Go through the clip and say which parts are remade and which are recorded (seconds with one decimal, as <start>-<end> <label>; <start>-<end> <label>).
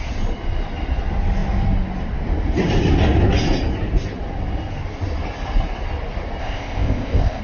0.0-6.4 recorded; 6.4-7.4 remade